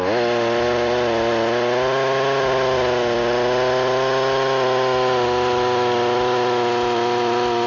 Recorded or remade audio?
recorded